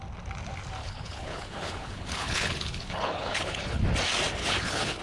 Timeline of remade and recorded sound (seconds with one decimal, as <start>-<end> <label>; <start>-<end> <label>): 0.0-0.8 recorded; 0.8-3.8 remade; 3.8-4.4 recorded; 4.4-5.0 remade